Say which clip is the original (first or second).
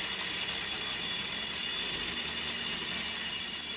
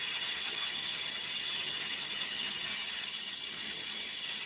first